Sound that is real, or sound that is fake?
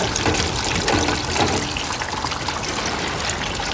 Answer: real